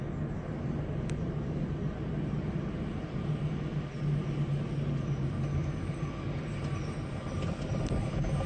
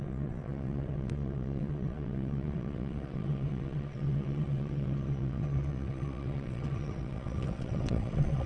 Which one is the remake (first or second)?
second